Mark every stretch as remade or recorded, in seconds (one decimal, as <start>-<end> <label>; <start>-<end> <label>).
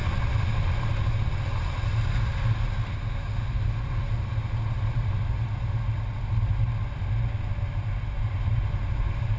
0.0-3.0 recorded; 3.0-3.5 remade; 3.5-9.4 recorded